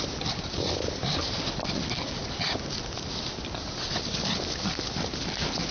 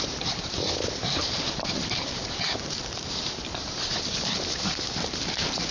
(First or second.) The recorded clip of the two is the first